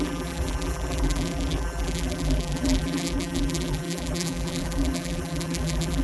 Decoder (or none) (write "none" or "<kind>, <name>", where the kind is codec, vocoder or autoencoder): vocoder, BigVGAN v2